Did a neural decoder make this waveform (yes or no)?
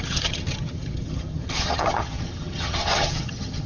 yes